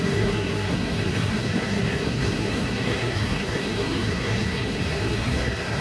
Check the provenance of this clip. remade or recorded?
remade